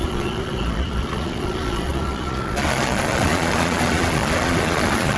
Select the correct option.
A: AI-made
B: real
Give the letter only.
A